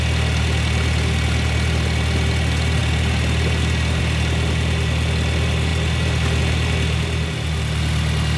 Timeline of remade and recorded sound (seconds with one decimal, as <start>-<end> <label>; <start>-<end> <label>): 0.0-8.4 recorded